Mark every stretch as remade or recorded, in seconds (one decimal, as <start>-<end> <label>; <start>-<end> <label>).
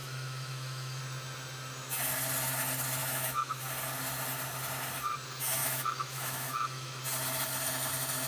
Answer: 0.0-1.0 remade; 1.0-3.0 recorded; 3.0-3.6 remade; 3.6-5.6 recorded; 5.6-7.0 remade; 7.0-8.3 recorded